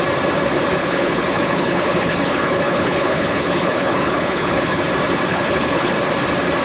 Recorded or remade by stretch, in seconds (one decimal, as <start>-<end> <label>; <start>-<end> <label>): 0.0-0.8 recorded; 0.8-4.8 remade; 4.8-5.3 recorded; 5.3-5.9 remade; 5.9-6.6 recorded